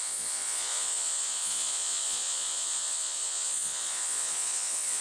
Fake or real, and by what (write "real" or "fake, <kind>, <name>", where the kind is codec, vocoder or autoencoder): fake, vocoder, Vocos